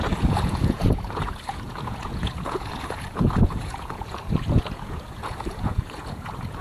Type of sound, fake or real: fake